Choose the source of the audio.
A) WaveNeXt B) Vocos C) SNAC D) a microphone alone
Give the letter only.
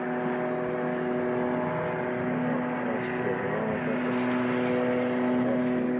D